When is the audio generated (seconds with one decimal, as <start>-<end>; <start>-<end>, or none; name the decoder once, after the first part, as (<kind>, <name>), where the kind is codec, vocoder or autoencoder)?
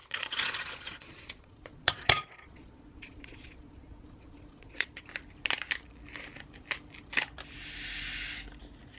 0.0-5.0 (vocoder, Vocos)